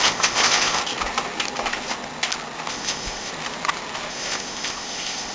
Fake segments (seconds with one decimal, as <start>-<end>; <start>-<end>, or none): 0.0-0.8; 2.7-3.3; 4.1-5.3